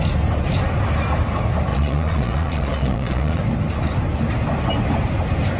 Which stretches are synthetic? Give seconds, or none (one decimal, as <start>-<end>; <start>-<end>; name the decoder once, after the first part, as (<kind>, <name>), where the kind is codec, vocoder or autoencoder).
1.7-3.4 (vocoder, Vocos)